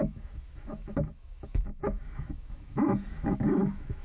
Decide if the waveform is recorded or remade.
remade